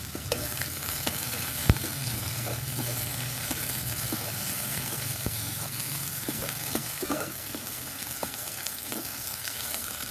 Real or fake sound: fake